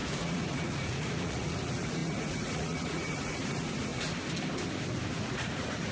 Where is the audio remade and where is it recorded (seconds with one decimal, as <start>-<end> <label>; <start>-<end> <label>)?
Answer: 0.0-3.9 remade; 3.9-5.2 recorded; 5.2-5.9 remade